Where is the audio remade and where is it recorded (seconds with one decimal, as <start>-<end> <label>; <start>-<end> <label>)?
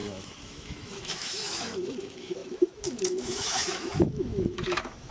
0.0-5.1 remade